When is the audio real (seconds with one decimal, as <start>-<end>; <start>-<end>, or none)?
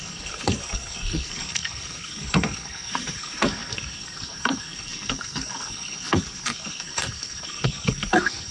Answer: none